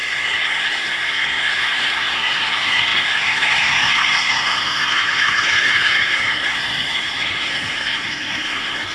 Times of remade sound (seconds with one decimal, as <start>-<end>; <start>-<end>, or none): 0.0-8.9